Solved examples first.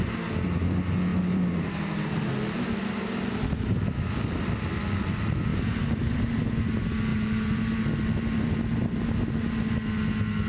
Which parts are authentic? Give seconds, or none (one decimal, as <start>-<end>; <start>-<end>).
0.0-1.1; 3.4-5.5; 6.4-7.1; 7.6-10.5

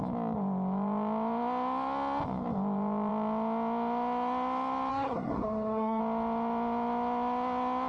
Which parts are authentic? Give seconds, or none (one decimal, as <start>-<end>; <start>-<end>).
0.0-4.9; 6.0-7.9

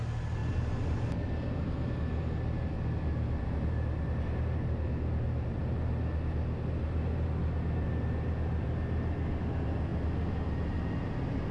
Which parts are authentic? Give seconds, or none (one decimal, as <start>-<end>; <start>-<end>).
0.0-11.5

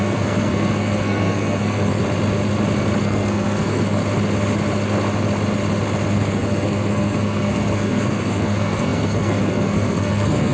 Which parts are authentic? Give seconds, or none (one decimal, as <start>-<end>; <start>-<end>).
2.0-3.0; 4.0-6.1